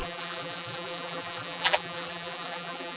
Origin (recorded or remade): remade